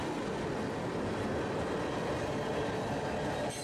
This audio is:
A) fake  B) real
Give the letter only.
B